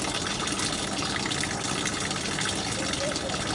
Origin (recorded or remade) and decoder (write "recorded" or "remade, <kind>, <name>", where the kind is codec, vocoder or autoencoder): recorded